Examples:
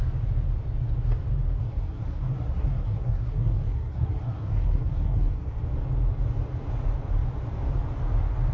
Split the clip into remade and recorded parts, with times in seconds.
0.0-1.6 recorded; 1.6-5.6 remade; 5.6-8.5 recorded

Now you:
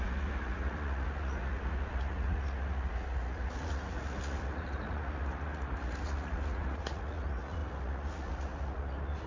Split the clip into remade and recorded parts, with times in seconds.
0.0-9.3 remade

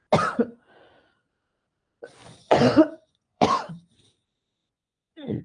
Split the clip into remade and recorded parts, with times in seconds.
0.0-2.2 recorded; 2.2-3.7 remade; 3.7-4.6 recorded; 4.6-5.4 remade